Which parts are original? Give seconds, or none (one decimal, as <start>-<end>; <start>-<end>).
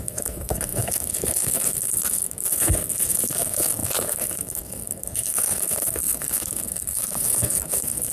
none